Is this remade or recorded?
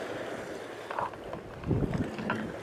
recorded